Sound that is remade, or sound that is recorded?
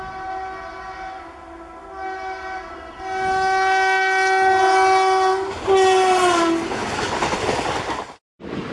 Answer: recorded